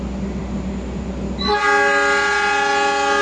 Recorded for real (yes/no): yes